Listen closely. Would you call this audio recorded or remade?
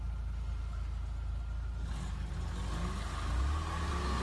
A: recorded